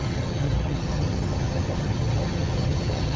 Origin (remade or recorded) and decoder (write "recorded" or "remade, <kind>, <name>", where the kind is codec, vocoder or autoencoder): remade, vocoder, HiFi-GAN